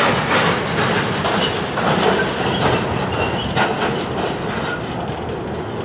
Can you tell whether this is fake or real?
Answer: real